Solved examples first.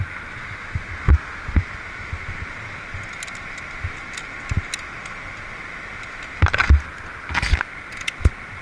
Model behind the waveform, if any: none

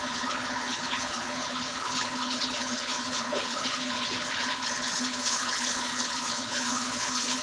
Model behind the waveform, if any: codec, HILCodec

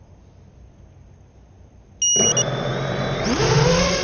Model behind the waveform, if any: none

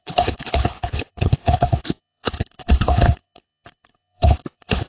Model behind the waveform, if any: codec, HILCodec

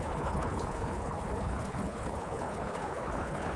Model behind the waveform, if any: codec, HILCodec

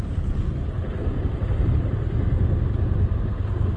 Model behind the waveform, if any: none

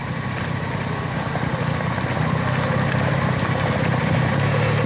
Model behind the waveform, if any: none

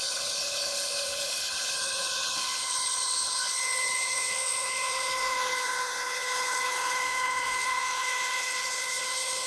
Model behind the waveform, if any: codec, HILCodec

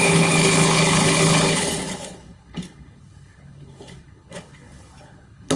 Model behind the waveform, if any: codec, HILCodec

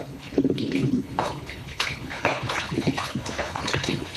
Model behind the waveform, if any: codec, HILCodec